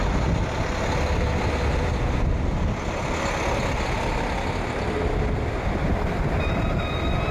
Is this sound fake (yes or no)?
no